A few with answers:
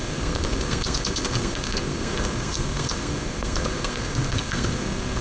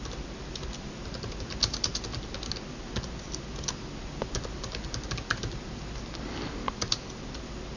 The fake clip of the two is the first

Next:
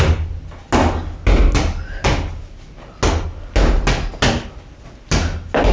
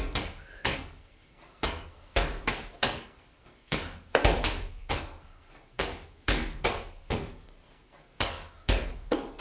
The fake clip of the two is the second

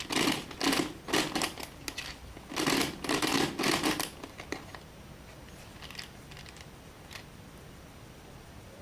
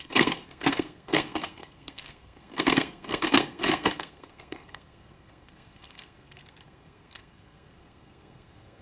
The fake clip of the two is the second